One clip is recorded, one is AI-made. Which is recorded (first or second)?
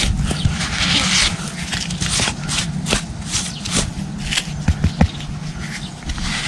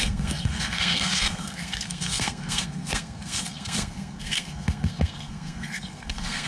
first